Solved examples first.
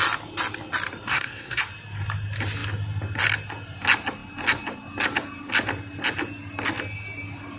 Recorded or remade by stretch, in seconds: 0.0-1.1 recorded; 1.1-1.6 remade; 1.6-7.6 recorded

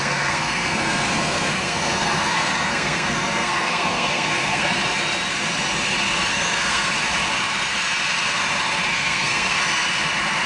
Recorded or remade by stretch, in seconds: 0.0-4.8 remade; 4.8-6.3 recorded; 6.3-6.9 remade; 6.9-8.9 recorded; 8.9-9.6 remade; 9.6-10.5 recorded

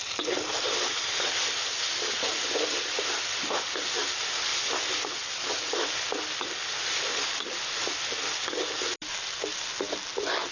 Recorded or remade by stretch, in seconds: 0.0-10.5 recorded

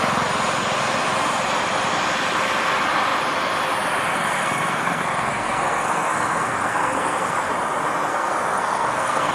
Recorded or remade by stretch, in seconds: 0.0-4.1 recorded; 4.1-7.5 remade; 7.5-8.1 recorded; 8.1-9.3 remade

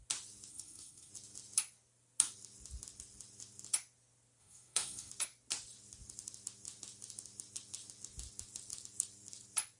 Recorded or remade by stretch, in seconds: 0.0-0.5 recorded; 0.5-1.1 remade; 1.1-4.4 recorded; 4.4-5.1 remade; 5.1-9.8 recorded

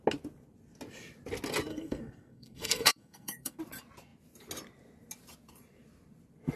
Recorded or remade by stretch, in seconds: 0.0-1.7 recorded; 1.7-3.6 remade; 3.6-6.6 recorded